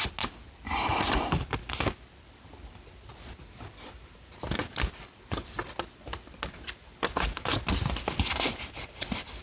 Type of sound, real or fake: real